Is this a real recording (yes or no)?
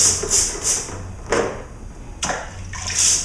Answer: yes